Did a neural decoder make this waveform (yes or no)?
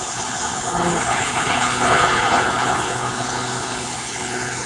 yes